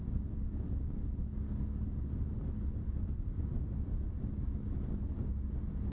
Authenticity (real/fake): real